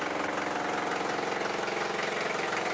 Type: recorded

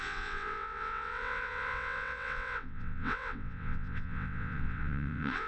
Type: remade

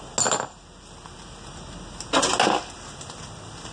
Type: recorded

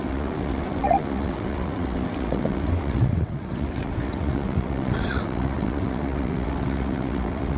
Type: remade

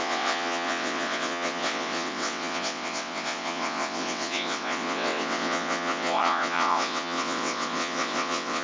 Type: remade